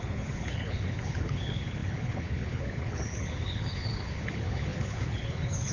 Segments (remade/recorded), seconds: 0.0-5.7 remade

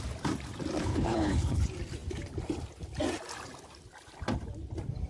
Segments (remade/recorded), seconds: 0.0-0.8 recorded; 0.8-1.6 remade; 1.6-5.1 recorded

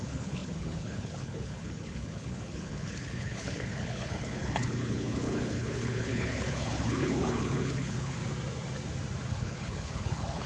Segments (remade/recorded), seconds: 0.0-8.2 remade; 8.2-9.3 recorded; 9.3-10.5 remade

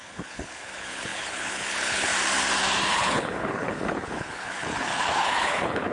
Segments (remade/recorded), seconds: 0.0-2.1 remade; 2.1-2.9 recorded; 2.9-5.9 remade

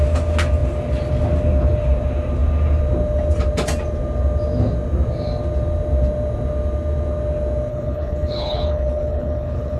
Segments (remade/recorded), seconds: 0.0-7.7 recorded; 7.7-9.8 remade

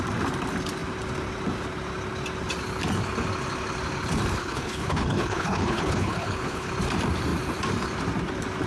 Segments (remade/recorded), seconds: 0.0-4.4 recorded; 4.4-6.7 remade; 6.7-8.7 recorded

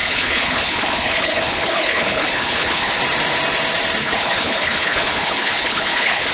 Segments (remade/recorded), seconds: 0.0-2.9 remade; 2.9-4.0 recorded; 4.0-6.3 remade

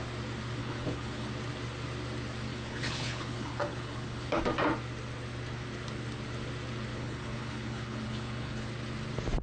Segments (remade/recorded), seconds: 0.0-0.6 recorded; 0.6-1.3 remade; 1.3-2.5 recorded; 2.5-4.4 remade; 4.4-6.9 recorded; 6.9-8.7 remade; 8.7-9.4 recorded